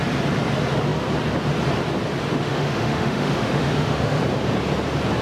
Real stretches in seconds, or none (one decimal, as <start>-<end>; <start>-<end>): 0.0-2.3; 4.2-5.2